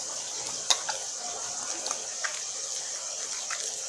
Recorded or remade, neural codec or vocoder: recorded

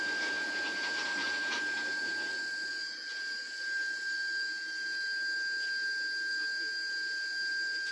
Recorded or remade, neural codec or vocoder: recorded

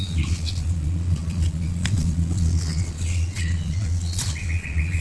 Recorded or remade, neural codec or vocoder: remade, vocoder, Vocos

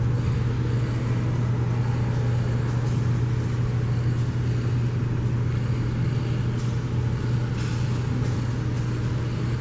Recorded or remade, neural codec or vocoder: recorded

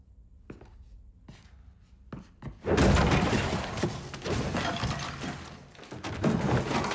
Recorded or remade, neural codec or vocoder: recorded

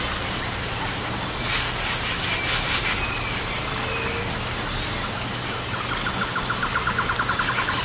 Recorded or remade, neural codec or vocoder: recorded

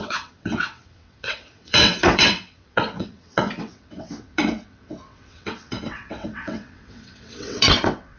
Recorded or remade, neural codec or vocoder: remade, vocoder, WaveNeXt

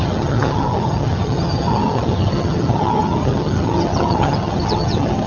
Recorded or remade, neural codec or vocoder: remade, vocoder, HiFi-GAN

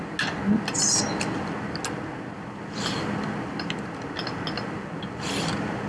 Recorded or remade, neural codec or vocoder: recorded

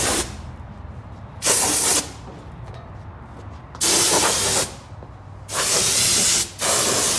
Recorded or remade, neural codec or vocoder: recorded